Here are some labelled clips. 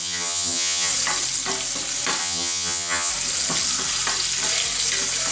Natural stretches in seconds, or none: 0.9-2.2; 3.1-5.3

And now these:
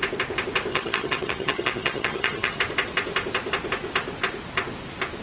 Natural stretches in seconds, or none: 0.0-0.7; 2.6-5.2

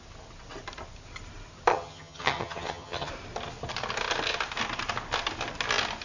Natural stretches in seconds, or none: 0.0-1.7; 3.1-6.0

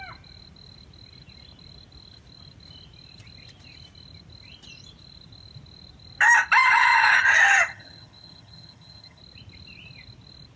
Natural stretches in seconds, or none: 0.0-6.6; 9.2-10.6

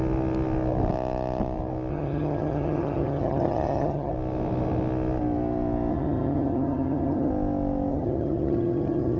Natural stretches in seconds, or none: 0.0-1.9; 4.1-5.9; 7.3-7.9

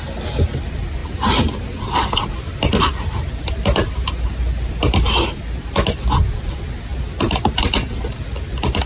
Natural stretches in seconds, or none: 0.0-8.9